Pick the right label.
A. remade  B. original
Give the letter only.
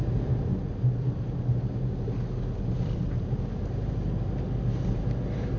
B